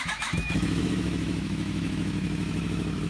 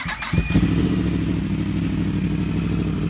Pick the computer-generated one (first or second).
first